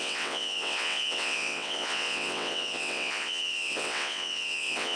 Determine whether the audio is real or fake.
fake